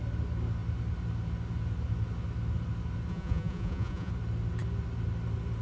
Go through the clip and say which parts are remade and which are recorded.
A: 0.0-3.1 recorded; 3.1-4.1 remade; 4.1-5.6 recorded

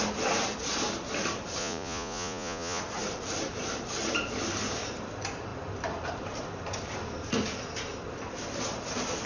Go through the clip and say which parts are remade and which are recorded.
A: 0.0-1.6 recorded; 1.6-2.8 remade; 2.8-9.3 recorded

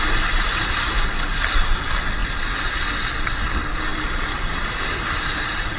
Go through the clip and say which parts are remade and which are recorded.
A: 0.0-5.8 recorded

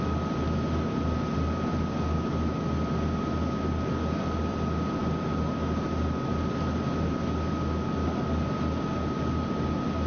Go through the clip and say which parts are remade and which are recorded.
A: 0.0-10.1 recorded

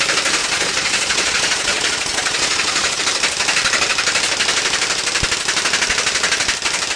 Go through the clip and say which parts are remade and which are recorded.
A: 0.0-0.4 recorded; 0.4-3.0 remade; 3.0-7.0 recorded